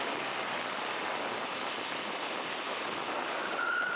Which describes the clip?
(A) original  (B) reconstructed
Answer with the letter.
A